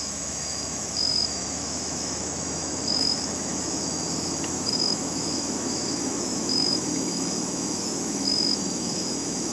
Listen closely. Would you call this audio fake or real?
fake